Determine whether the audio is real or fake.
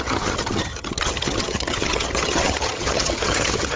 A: fake